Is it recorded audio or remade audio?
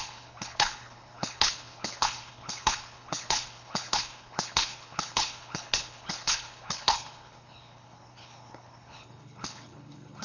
remade